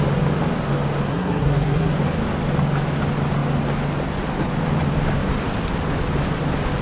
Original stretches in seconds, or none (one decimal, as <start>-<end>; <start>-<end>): 0.0-1.1; 1.9-6.8